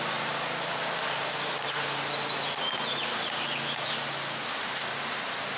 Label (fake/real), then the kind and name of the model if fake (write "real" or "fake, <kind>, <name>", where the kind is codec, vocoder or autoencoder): real